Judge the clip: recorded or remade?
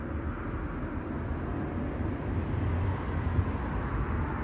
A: recorded